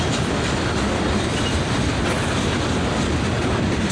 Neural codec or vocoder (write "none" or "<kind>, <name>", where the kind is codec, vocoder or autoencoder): vocoder, BigVGAN v2